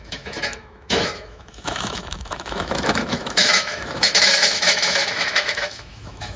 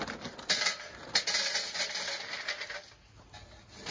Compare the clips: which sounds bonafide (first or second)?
second